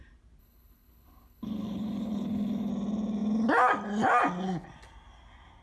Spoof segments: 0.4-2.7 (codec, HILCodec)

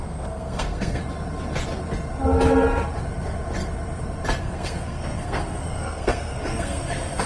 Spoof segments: 0.0-1.0 (codec, SNAC); 4.4-7.3

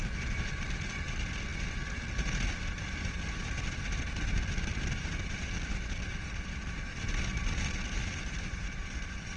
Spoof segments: 4.7-5.7 (vocoder, BigVGAN v2); 6.9-8.6

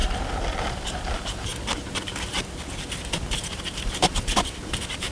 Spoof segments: 0.6-1.5 (vocoder, BigVGAN v2); 3.5-5.1